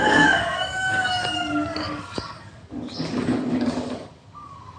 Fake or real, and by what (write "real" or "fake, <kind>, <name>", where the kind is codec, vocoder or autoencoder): fake, codec, DAC